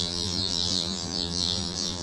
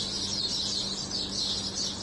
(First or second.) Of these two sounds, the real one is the second